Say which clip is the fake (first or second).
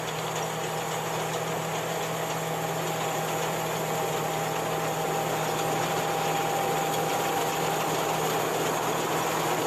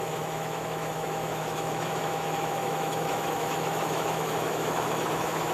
second